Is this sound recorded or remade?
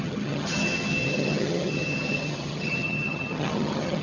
remade